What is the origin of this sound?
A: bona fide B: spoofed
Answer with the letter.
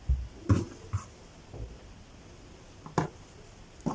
A